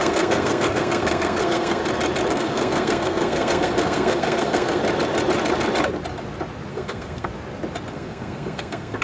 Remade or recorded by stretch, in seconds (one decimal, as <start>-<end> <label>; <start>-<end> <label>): 0.0-1.8 remade; 1.8-2.3 recorded; 2.3-4.8 remade; 4.8-6.7 recorded; 6.7-7.3 remade; 7.3-7.9 recorded; 7.9-9.0 remade